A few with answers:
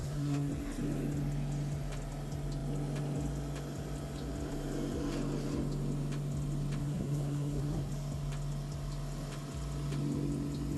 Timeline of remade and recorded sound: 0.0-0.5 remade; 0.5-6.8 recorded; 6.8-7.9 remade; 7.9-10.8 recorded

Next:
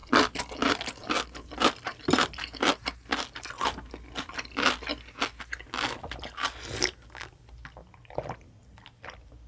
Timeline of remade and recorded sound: 0.0-9.5 recorded

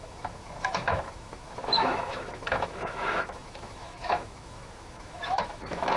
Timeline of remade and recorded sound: 0.0-6.0 remade

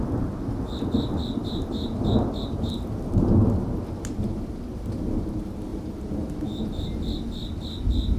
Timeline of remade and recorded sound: 0.0-1.4 recorded; 1.4-2.7 remade; 2.7-5.7 recorded; 5.7-6.2 remade; 6.2-8.2 recorded

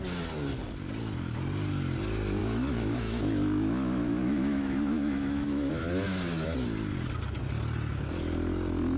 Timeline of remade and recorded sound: 0.0-2.4 recorded; 2.4-5.7 remade; 5.7-9.0 recorded

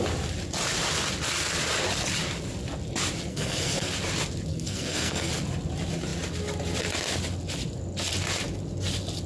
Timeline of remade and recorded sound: 0.0-3.3 recorded; 3.3-3.9 remade; 3.9-4.5 recorded; 4.5-5.3 remade; 5.3-9.3 recorded

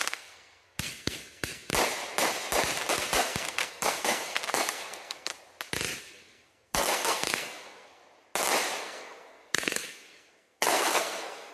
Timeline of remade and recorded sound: 0.0-1.7 remade; 1.7-2.9 recorded; 2.9-5.3 remade; 5.3-6.0 recorded; 6.0-8.0 remade; 8.0-8.8 recorded; 8.8-11.5 remade